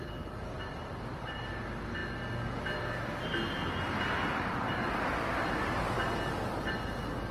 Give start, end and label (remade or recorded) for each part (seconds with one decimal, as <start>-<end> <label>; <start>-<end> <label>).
0.0-7.3 recorded